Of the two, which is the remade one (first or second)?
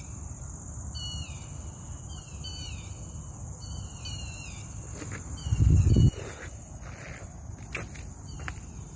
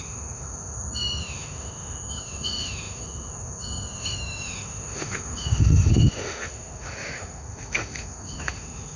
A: second